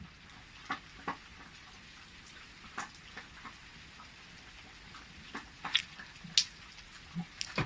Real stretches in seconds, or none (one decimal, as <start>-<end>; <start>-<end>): 0.0-7.7

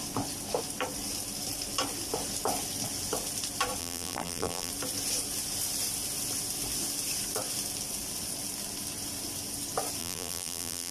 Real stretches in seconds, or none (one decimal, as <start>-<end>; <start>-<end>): 0.0-3.8; 4.7-10.0

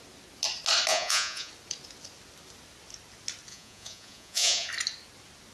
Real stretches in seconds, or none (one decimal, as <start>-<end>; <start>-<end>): 0.0-0.9; 1.5-3.5; 4.7-5.5

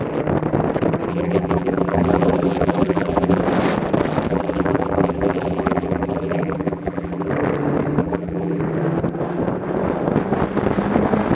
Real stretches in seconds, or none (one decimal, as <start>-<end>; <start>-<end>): 0.0-1.1; 3.4-4.3; 7.3-8.0; 8.6-11.3

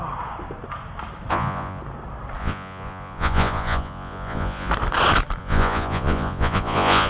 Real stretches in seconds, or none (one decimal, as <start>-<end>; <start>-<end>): 0.0-1.3; 1.8-2.4; 4.7-5.4